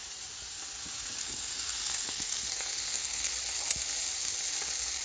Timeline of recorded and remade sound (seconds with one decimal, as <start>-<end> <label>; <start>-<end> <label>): 0.0-1.2 recorded; 1.2-3.3 remade; 3.3-5.0 recorded